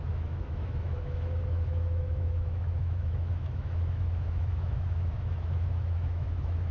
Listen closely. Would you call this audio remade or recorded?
remade